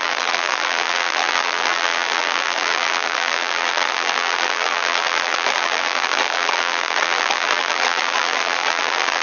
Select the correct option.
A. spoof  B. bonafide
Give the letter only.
A